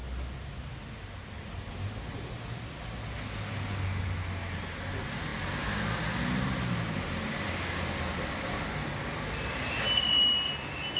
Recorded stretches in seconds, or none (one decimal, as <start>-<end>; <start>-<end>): 0.0-11.0